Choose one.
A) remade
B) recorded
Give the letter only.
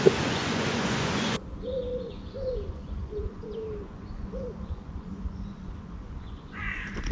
A